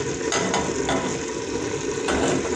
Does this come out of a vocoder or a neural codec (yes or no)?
no